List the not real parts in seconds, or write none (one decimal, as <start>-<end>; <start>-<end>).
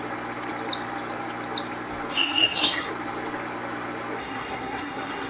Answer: 2.1-2.9; 4.2-5.3